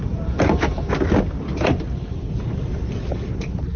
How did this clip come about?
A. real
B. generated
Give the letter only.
A